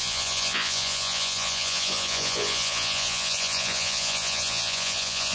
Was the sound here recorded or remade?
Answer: remade